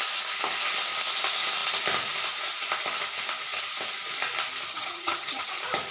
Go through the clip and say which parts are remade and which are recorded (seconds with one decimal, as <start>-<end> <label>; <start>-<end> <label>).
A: 0.0-4.7 recorded; 4.7-5.5 remade; 5.5-5.9 recorded